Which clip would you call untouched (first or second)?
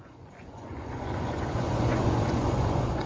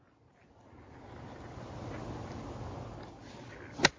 second